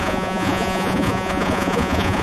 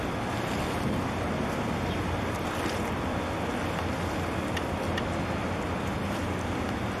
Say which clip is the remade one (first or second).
first